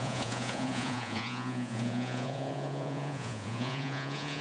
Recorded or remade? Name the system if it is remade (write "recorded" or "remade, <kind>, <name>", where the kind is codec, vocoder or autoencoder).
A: remade, vocoder, Vocos